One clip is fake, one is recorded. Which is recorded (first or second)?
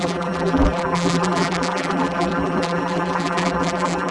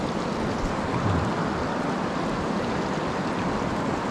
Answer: second